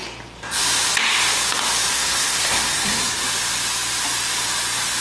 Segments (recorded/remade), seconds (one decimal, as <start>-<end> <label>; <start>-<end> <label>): 0.0-1.9 recorded; 1.9-3.0 remade; 3.0-5.0 recorded